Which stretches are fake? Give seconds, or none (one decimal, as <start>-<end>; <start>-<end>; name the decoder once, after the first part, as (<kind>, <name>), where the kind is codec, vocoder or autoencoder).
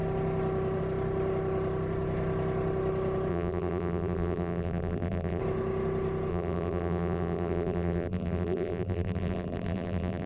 3.3-5.4 (vocoder, BigVGAN v2); 6.3-10.3